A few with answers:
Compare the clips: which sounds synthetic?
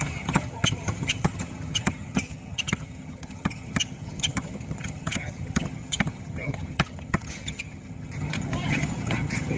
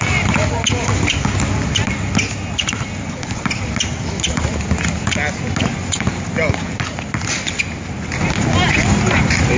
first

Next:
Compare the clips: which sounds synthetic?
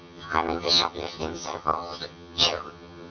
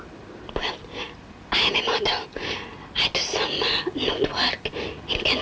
first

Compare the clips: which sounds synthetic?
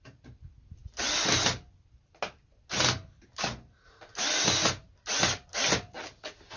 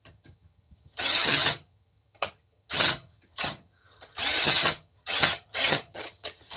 second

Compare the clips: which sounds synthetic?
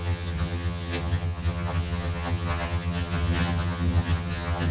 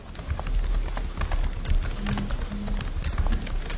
first